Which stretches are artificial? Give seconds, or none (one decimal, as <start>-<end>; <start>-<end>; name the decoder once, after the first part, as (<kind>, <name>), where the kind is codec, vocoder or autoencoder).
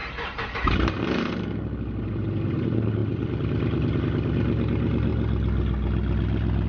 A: 0.0-1.4 (vocoder, BigVGAN v2)